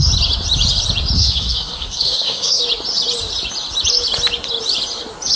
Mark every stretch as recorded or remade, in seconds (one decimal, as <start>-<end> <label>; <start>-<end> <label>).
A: 0.0-1.2 recorded; 1.2-2.6 remade; 2.6-5.4 recorded

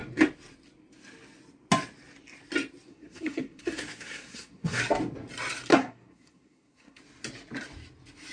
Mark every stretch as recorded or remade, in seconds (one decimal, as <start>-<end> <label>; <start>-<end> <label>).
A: 0.0-2.9 recorded; 2.9-4.8 remade; 4.8-5.7 recorded; 5.7-7.0 remade; 7.0-8.3 recorded

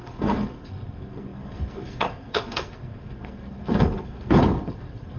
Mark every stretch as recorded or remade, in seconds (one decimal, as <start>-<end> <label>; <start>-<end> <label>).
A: 0.0-5.2 remade

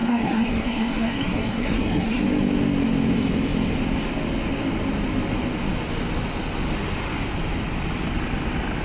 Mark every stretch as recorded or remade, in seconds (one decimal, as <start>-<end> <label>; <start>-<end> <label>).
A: 0.0-2.2 remade; 2.2-8.8 recorded

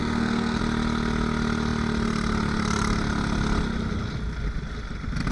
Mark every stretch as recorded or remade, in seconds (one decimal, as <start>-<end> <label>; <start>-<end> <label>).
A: 0.0-0.6 remade; 0.6-5.3 recorded

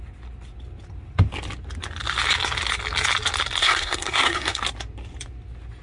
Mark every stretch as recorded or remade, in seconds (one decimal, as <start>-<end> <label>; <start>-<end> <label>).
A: 0.0-3.6 recorded; 3.6-4.6 remade; 4.6-5.8 recorded

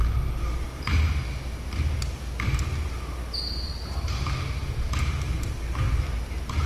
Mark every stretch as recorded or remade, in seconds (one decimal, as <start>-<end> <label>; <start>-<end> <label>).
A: 0.0-4.6 recorded; 4.6-5.1 remade; 5.1-6.7 recorded

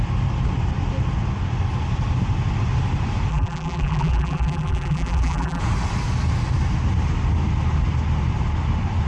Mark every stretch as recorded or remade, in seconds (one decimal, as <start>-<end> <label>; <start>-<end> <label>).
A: 0.0-3.3 recorded; 3.3-5.6 remade; 5.6-9.1 recorded